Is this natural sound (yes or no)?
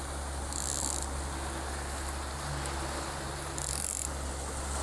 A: yes